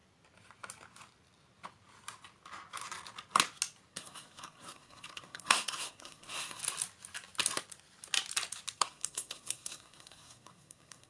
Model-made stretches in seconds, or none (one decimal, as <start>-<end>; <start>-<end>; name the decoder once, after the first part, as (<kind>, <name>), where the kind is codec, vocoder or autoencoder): 3.9-6.6 (codec, SNAC); 8.8-11.1